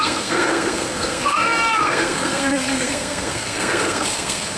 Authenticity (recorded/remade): remade